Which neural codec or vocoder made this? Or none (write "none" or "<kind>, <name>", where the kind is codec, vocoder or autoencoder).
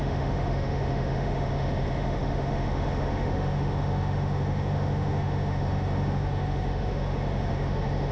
autoencoder, DAC-VAE